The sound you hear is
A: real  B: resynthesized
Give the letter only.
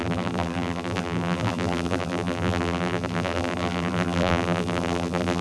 B